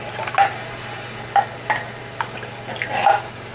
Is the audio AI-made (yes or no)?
no